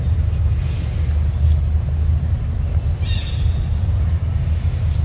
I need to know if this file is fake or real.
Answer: real